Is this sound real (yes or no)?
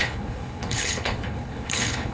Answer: no